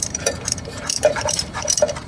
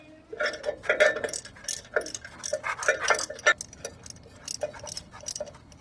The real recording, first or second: second